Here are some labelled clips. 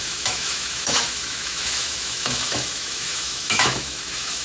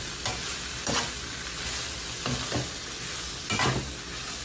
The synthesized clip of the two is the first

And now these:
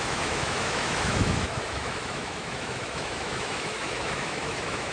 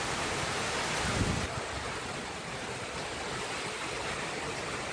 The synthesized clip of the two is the first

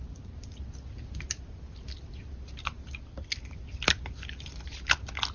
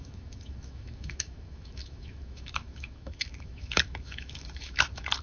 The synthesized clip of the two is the second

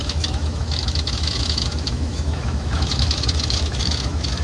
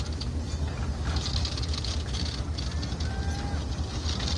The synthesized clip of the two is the first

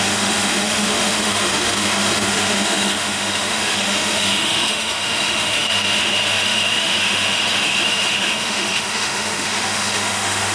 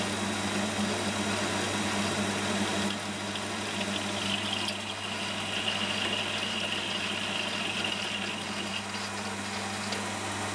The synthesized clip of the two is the first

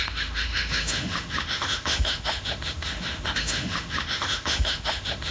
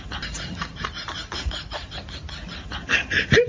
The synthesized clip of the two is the first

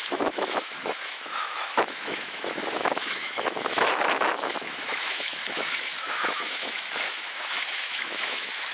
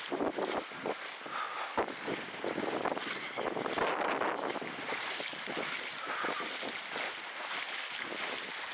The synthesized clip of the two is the first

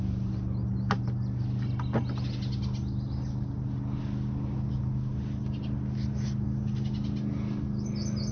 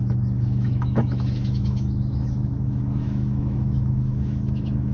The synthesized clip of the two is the second